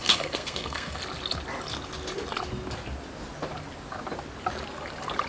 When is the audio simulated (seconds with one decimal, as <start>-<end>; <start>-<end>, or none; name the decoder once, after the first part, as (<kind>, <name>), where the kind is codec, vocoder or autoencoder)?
0.0-1.0 (codec, SNAC)